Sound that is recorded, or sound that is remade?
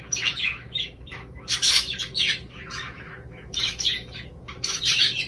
remade